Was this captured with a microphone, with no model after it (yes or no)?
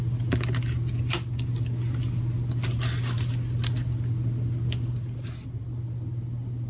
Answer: yes